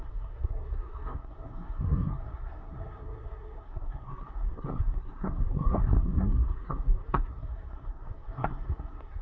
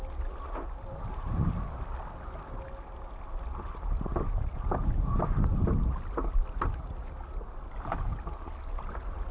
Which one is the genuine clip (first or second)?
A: second